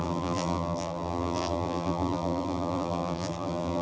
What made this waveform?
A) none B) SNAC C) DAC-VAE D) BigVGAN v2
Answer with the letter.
D